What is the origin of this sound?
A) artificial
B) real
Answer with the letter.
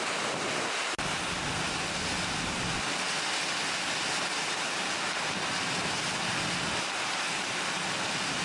B